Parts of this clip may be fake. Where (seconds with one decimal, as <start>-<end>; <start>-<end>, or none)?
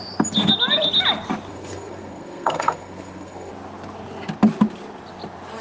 1.5-3.5